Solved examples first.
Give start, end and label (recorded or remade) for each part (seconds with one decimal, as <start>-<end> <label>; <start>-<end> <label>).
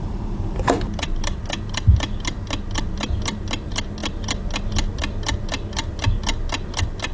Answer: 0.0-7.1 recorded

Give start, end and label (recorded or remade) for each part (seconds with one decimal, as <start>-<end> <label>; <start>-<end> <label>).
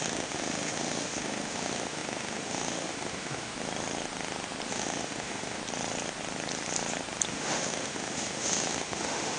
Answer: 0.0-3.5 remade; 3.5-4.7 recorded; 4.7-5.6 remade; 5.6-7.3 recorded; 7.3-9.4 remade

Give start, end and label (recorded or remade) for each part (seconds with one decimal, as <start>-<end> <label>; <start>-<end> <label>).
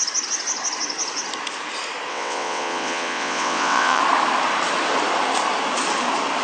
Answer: 0.0-2.1 recorded; 2.1-4.0 remade; 4.0-6.4 recorded